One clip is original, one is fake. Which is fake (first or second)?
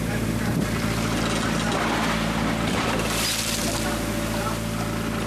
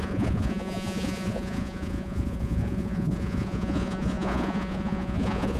second